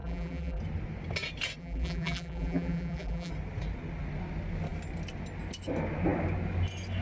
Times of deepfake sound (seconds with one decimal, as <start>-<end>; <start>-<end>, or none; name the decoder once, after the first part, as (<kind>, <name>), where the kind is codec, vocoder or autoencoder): 0.0-0.6 (vocoder, BigVGAN v2); 1.6-3.3